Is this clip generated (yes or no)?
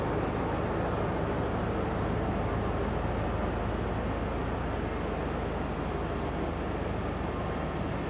no